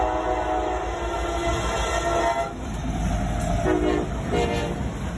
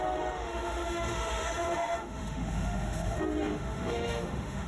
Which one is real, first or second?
first